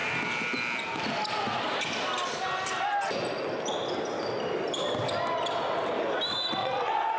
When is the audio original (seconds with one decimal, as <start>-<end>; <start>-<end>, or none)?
0.0-6.6